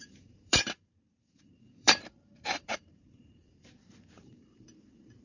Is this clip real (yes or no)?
no